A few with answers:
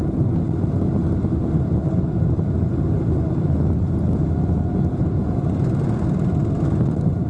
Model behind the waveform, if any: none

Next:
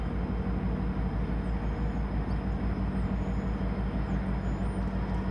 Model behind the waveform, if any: none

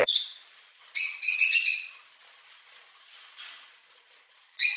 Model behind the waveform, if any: vocoder, Vocos